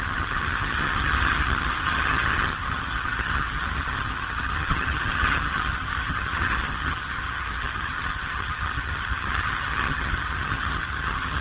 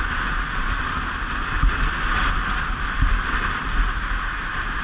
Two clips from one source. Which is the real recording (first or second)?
second